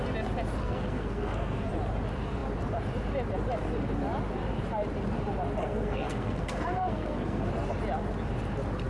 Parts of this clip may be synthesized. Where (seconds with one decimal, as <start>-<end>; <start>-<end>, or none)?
0.6-1.7; 5.6-7.5